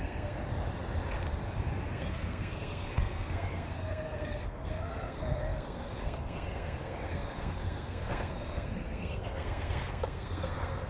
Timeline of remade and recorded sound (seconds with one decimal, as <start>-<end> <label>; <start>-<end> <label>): 0.0-0.4 remade; 0.4-1.9 recorded; 1.9-10.9 remade

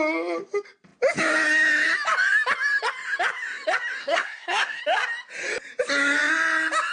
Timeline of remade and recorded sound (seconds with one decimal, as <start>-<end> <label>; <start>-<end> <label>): 0.0-4.0 recorded; 4.0-4.8 remade; 4.8-6.9 recorded

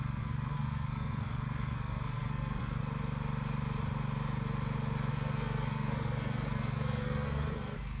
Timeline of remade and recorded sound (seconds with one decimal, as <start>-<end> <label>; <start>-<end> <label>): 0.0-2.8 remade; 2.8-5.1 recorded; 5.1-8.0 remade

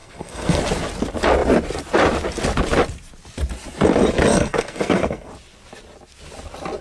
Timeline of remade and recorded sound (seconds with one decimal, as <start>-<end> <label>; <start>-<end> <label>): 0.0-0.6 remade; 0.6-4.3 recorded; 4.3-5.3 remade; 5.3-6.8 recorded

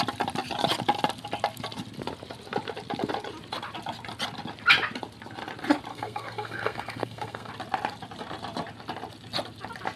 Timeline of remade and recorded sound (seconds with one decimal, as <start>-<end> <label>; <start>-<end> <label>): 0.0-5.9 recorded; 5.9-7.5 remade; 7.5-10.0 recorded

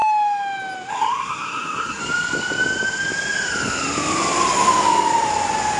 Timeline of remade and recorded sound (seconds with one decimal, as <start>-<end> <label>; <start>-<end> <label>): 0.0-0.9 recorded; 0.9-2.0 remade; 2.0-5.8 recorded

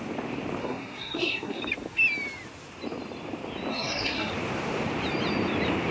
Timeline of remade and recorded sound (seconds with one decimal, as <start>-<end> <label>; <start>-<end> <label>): 0.0-0.6 recorded; 0.6-1.6 remade; 1.6-3.7 recorded; 3.7-4.3 remade; 4.3-5.9 recorded